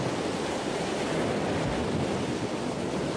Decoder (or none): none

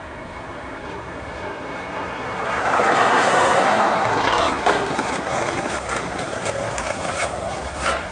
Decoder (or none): codec, SNAC